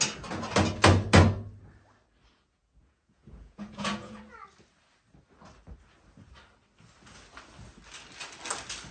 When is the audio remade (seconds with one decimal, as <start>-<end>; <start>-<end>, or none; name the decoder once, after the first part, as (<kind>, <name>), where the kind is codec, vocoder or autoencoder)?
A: 2.3-4.2 (vocoder, Vocos)